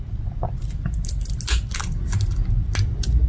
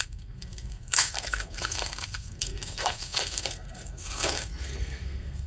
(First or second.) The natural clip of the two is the first